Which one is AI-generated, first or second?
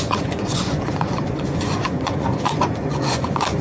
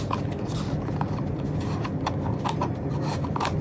first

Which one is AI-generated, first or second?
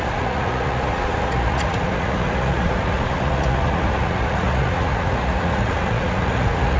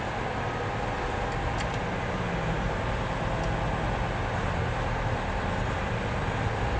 first